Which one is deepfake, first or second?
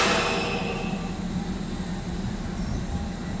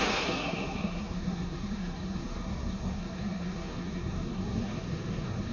second